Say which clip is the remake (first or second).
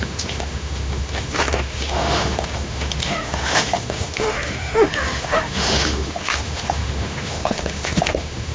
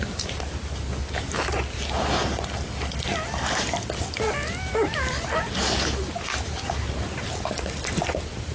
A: first